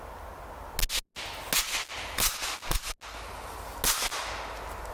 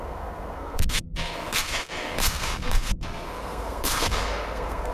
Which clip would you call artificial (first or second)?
second